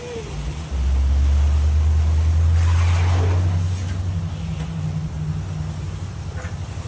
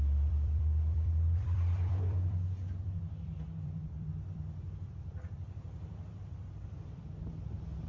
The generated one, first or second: second